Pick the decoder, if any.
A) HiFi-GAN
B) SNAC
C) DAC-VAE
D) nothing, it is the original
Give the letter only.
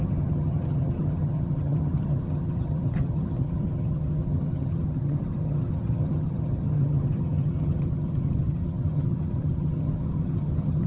A